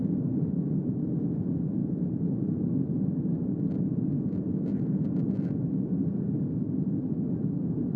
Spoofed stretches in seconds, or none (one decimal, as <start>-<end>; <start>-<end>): none